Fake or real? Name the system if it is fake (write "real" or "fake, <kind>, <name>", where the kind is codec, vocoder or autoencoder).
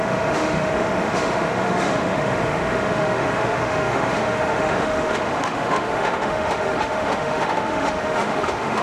fake, autoencoder, DAC-VAE